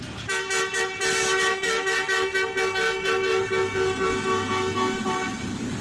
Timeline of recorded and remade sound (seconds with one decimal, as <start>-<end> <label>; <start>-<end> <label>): 0.0-1.5 recorded; 1.5-5.0 remade; 5.0-5.8 recorded